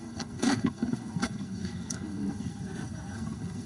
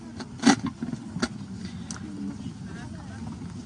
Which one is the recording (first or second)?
second